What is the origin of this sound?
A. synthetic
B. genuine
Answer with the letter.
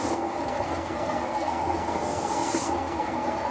A